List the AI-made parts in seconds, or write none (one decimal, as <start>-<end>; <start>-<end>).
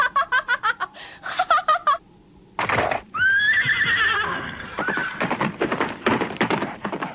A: 0.0-1.8; 4.6-5.0; 6.1-7.1